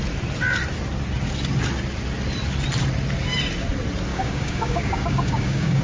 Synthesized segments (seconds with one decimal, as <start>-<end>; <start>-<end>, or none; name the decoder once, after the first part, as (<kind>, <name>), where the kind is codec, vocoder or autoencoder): 4.1-5.8 (codec, DAC)